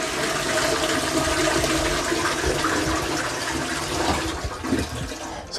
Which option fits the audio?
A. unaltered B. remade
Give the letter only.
A